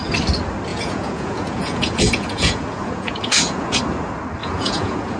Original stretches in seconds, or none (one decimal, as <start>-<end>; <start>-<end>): 0.0-0.7; 3.8-4.4